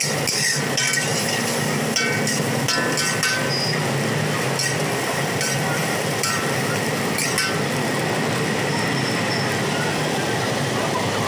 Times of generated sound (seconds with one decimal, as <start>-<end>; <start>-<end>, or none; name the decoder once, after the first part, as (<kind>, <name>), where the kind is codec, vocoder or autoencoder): 5.8-6.6 (vocoder, BigVGAN v2)